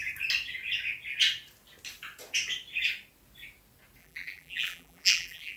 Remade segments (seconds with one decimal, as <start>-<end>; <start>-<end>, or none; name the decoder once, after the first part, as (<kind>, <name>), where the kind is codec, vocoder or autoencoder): 4.0-5.6 (vocoder, BigVGAN v2)